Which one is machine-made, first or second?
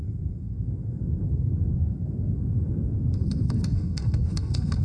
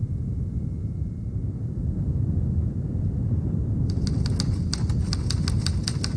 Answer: first